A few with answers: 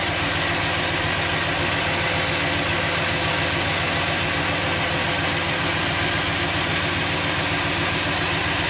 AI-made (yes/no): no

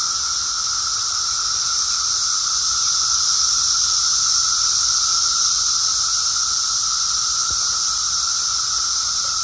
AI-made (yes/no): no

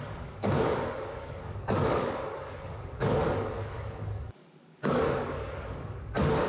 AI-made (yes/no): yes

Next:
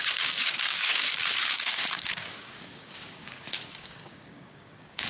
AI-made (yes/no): yes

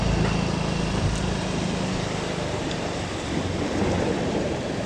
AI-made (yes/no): no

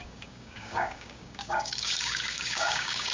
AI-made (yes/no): yes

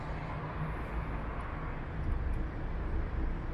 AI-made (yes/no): no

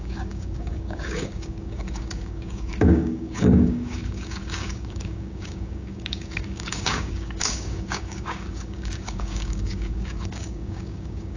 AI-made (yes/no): yes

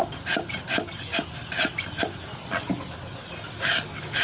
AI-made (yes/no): no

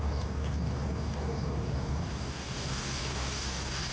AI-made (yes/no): yes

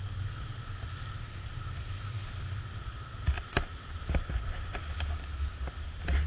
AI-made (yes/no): no